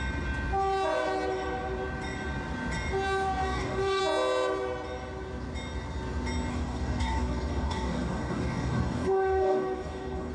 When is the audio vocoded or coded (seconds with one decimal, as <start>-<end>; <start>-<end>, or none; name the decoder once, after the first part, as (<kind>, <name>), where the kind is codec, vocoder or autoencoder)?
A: 3.4-4.0 (codec, DAC); 6.5-10.3